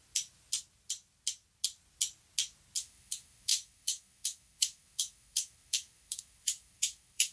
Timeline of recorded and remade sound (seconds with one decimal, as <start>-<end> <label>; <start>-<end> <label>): 0.0-2.8 recorded; 2.8-7.3 remade